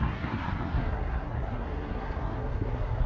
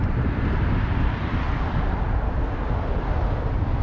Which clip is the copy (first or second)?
first